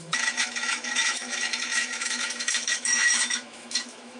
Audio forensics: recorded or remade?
remade